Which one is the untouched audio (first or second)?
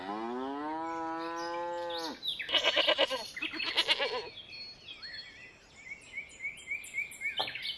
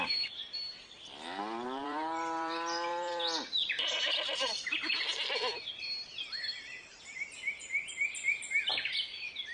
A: first